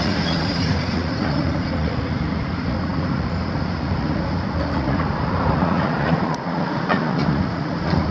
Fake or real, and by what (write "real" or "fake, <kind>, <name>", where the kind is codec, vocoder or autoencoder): fake, vocoder, Vocos